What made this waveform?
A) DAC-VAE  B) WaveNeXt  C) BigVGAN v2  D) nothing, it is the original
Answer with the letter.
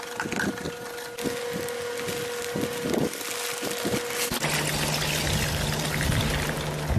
D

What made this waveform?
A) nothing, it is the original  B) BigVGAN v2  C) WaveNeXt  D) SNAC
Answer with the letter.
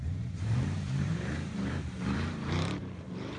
B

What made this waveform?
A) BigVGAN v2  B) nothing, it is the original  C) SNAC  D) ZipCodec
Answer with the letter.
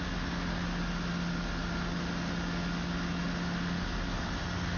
B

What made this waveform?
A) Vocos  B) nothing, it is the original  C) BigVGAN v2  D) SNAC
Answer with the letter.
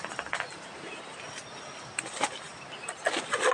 B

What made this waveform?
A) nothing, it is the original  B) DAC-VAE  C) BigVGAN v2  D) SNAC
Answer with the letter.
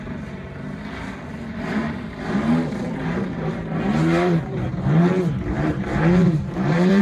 C